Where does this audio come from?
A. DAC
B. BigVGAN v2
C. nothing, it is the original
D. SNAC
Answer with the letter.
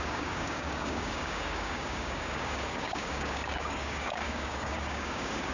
A